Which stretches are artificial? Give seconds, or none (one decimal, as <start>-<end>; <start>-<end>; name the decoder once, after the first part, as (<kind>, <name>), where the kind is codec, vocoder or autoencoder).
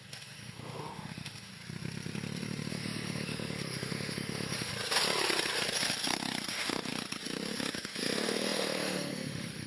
0.0-1.5 (autoencoder, DAC-VAE); 2.7-4.7; 6.5-6.9; 7.7-9.7